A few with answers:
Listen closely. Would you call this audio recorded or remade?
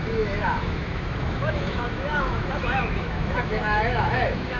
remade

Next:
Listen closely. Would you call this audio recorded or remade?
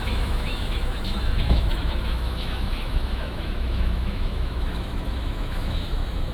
remade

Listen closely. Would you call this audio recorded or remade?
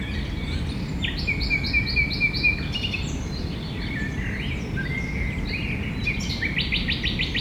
recorded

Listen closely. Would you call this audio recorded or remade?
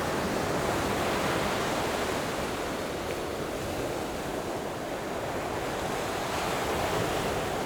recorded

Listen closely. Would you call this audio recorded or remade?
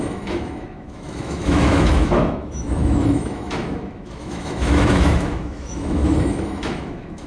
remade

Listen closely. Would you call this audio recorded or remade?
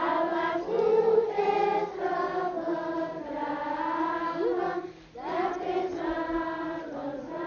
recorded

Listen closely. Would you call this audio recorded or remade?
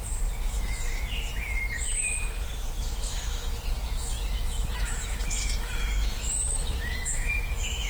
remade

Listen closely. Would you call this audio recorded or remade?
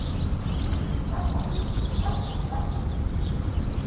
recorded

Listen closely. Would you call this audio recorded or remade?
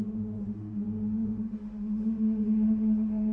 remade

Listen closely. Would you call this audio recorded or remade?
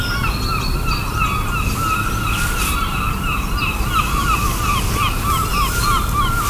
recorded